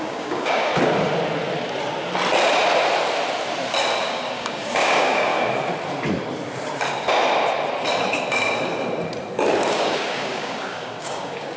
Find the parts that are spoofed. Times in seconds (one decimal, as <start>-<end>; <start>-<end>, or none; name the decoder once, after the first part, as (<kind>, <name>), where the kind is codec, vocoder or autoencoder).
0.0-0.7 (codec, DAC); 4.0-5.3; 9.7-11.6